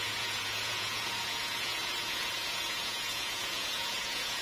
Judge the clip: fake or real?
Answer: fake